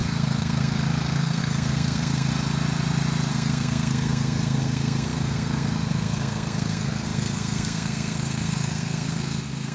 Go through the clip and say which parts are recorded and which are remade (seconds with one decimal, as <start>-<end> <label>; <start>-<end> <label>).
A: 0.0-2.3 remade; 2.3-3.3 recorded; 3.3-9.7 remade